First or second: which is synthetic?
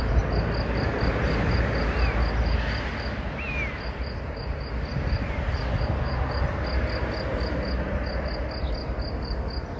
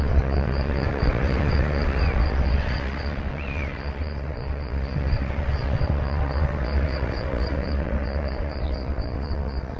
second